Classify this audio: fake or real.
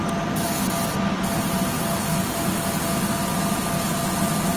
real